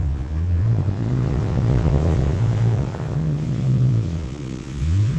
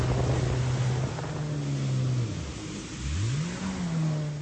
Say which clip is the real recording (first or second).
second